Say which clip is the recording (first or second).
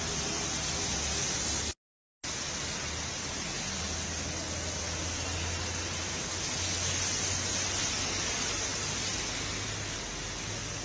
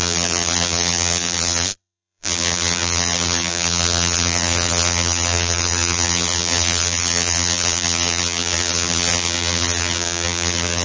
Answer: first